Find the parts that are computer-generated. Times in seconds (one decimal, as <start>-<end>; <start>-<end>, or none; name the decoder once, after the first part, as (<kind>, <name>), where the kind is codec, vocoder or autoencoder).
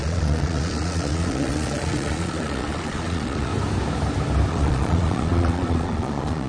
0.0-3.5 (vocoder, Vocos); 4.5-6.5